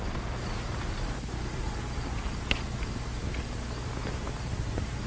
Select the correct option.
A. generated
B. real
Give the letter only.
B